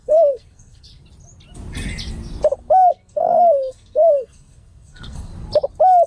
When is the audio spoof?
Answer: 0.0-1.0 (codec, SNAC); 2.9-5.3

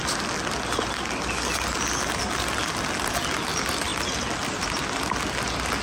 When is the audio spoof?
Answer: none

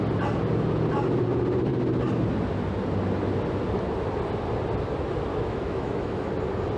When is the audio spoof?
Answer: 5.3-6.3 (autoencoder, DAC-VAE)

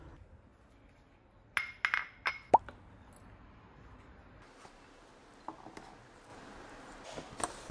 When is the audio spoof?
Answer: none

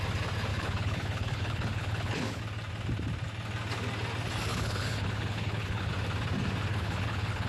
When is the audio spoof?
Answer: 0.5-2.4 (codec, HILCodec); 4.5-5.9; 6.7-7.5

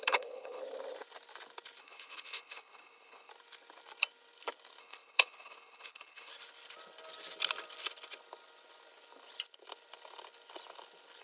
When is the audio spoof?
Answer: 0.0-0.6 (codec, HILCodec); 1.8-3.3; 4.8-6.3

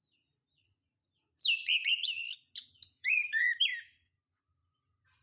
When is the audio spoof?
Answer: 0.0-1.0 (vocoder, BigVGAN v2); 2.9-5.2

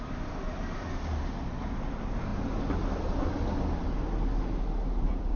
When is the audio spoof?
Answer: none